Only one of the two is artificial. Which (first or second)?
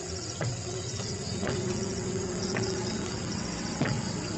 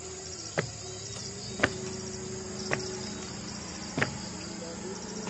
first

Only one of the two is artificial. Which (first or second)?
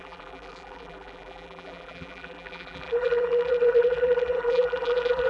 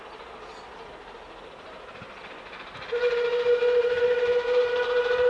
first